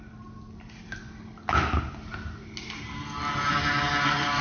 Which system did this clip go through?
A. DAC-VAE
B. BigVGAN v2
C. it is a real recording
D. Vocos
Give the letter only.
C